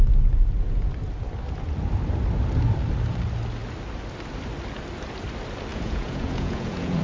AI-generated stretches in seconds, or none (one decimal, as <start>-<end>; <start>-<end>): 5.7-7.0